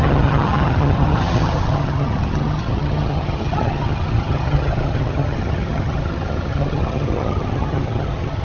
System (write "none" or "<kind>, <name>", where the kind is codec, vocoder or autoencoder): vocoder, HiFi-GAN